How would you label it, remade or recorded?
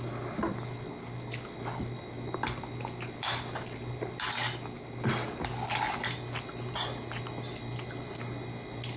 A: recorded